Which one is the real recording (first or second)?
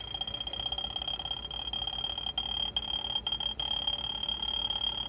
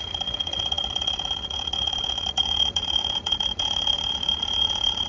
first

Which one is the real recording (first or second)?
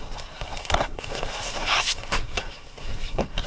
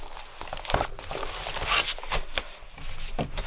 second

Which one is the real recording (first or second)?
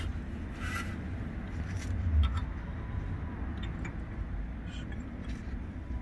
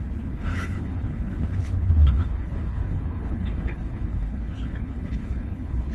first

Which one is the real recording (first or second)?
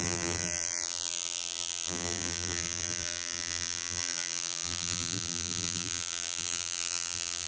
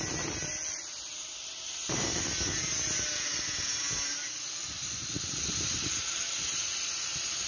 second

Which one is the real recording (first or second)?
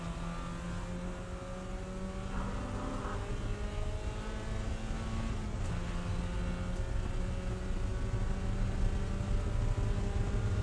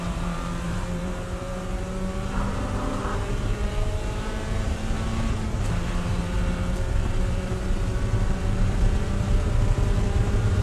first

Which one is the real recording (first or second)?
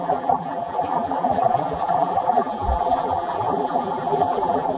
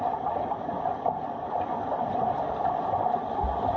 second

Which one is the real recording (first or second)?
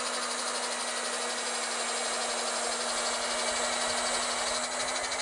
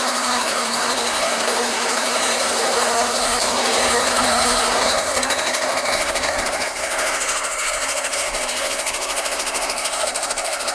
first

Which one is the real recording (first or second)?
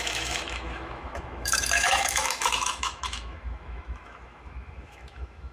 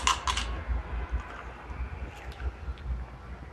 second